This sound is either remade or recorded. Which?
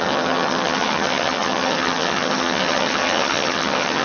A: remade